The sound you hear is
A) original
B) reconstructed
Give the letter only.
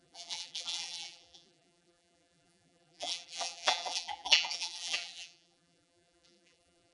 B